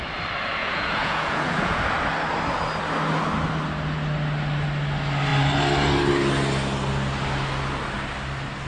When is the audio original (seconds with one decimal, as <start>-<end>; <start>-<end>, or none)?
0.0-0.6; 1.8-8.7